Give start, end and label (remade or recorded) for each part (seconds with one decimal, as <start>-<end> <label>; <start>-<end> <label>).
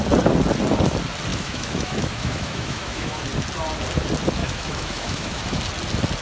0.0-1.3 recorded; 1.3-3.2 remade; 3.2-4.4 recorded; 4.4-5.6 remade; 5.6-6.2 recorded